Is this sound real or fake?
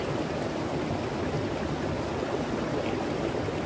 real